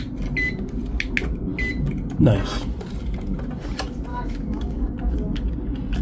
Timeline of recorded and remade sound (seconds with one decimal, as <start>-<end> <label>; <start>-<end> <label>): 0.0-4.1 recorded; 4.1-4.9 remade; 4.9-6.0 recorded